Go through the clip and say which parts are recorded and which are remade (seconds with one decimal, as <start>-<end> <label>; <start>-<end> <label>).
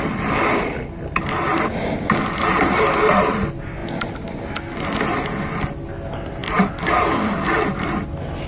0.0-8.5 recorded